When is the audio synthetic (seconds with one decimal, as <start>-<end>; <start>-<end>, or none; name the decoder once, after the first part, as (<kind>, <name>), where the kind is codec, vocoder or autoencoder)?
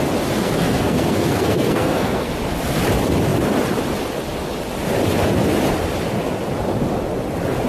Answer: 0.4-2.3 (codec, SNAC)